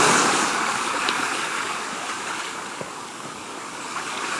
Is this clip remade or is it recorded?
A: remade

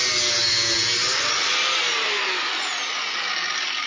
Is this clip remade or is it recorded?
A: recorded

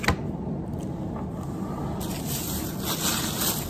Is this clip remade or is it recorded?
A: recorded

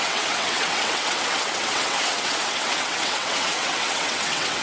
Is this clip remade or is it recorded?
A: remade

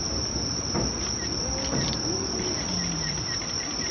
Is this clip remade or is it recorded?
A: recorded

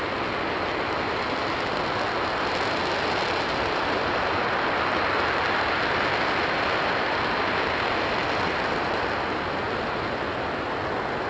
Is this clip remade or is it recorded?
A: recorded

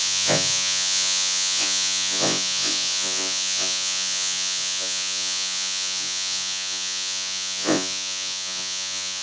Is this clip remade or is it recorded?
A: remade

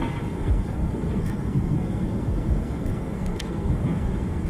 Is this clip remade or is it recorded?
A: remade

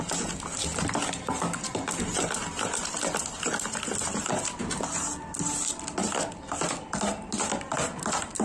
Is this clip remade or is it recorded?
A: recorded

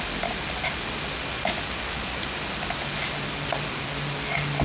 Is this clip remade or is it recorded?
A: recorded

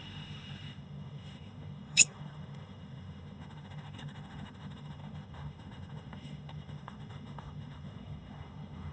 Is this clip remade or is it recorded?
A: remade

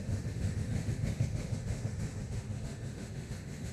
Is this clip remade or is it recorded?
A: remade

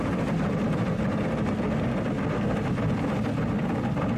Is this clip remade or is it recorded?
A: recorded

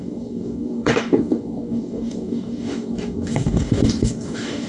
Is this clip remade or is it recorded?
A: remade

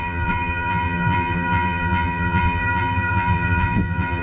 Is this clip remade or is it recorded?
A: remade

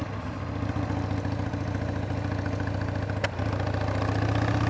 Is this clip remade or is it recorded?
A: recorded